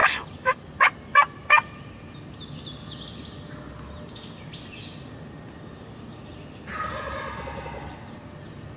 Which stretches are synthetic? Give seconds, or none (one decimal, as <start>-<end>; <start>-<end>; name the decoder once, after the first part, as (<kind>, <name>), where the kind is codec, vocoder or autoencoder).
none